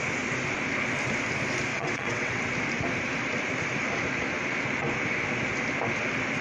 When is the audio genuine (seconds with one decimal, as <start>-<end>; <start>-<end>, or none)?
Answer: 0.0-1.7; 2.4-6.4